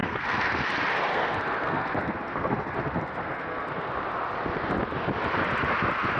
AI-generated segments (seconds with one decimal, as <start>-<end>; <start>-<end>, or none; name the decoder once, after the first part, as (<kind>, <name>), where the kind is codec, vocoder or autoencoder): 0.0-0.6 (codec, SNAC); 1.1-3.9